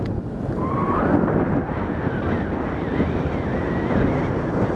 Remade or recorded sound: recorded